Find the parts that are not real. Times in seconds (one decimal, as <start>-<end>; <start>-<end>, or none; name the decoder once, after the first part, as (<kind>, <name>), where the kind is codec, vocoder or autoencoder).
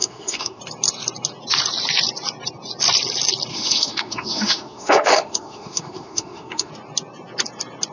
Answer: 0.0-0.6 (autoencoder, DAC-VAE); 3.5-6.7